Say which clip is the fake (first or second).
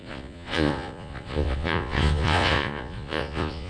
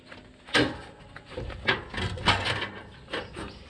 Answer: first